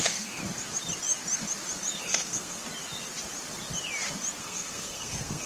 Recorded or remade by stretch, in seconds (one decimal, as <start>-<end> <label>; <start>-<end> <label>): 0.0-0.4 remade; 0.4-2.0 recorded; 2.0-2.6 remade; 2.6-4.4 recorded; 4.4-5.5 remade